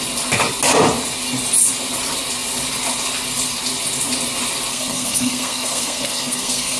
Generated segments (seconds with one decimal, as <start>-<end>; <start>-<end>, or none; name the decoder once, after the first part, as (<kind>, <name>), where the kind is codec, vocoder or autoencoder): 4.7-6.8 (codec, SNAC)